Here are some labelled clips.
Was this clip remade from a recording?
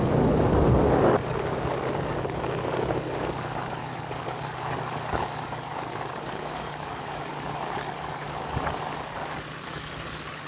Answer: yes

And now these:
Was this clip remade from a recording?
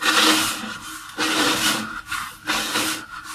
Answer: no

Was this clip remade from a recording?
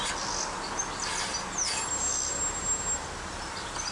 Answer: no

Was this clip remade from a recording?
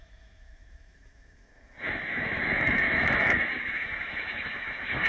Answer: yes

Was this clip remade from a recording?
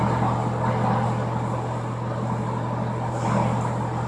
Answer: yes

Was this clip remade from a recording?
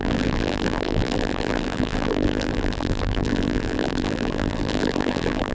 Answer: yes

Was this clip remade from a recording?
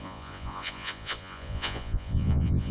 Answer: yes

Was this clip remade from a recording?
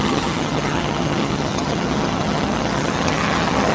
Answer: yes